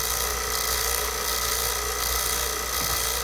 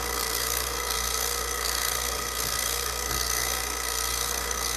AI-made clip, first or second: second